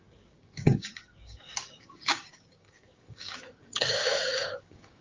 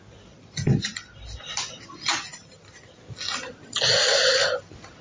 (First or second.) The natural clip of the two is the second